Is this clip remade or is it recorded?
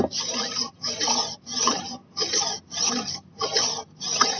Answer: recorded